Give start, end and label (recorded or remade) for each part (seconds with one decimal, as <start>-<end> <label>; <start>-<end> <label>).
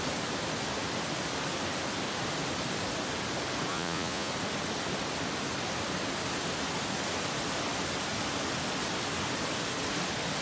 0.0-3.7 recorded; 3.7-4.3 remade; 4.3-10.4 recorded